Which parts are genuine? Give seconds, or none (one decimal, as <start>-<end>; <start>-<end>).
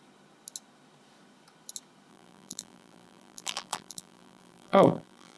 0.0-2.1